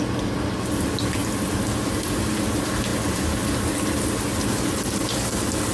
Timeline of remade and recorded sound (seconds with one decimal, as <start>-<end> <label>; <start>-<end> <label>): 0.0-5.7 recorded